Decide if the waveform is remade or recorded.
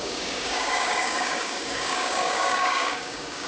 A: remade